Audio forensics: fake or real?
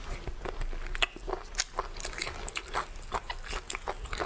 real